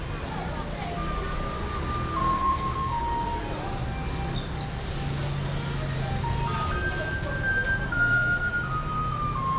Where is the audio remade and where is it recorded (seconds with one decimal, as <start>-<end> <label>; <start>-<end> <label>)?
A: 0.0-2.2 recorded; 2.2-3.0 remade; 3.0-7.9 recorded; 7.9-8.5 remade; 8.5-9.6 recorded